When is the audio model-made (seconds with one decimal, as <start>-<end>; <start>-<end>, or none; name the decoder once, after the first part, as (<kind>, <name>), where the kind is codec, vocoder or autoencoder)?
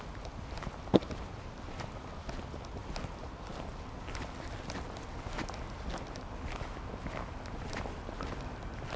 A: none